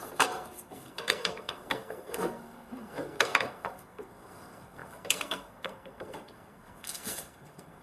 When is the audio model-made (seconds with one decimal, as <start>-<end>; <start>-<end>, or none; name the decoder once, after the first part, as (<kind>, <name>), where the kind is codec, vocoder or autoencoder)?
0.0-7.8 (codec, SNAC)